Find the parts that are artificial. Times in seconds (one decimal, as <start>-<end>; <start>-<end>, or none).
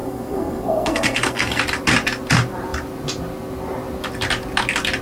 0.0-1.6